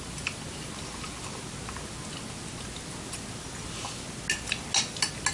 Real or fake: real